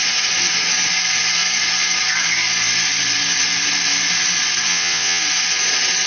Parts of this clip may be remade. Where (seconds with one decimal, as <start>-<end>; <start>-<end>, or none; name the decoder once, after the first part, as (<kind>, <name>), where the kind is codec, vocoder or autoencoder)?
4.7-5.2 (vocoder, WaveNeXt)